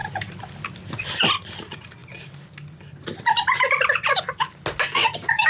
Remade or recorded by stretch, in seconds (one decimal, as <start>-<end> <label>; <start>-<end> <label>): 0.0-5.5 recorded